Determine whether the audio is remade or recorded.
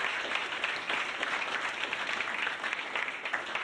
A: recorded